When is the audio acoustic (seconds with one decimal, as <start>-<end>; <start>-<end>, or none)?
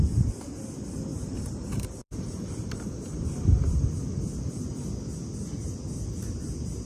0.0-1.1; 3.2-6.9